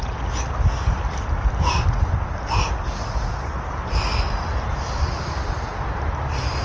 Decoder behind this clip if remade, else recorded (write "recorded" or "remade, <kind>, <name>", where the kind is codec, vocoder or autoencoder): recorded